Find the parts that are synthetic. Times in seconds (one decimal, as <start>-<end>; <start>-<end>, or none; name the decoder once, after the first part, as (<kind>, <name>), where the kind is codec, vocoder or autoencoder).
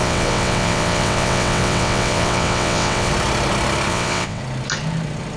0.0-3.1 (vocoder, WaveNeXt); 3.9-4.4